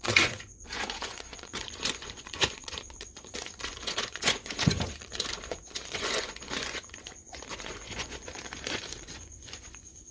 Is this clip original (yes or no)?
no